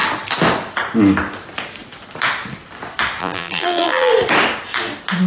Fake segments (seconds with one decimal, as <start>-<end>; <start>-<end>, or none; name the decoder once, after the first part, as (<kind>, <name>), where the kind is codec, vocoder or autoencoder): 3.2-4.1 (vocoder, BigVGAN v2)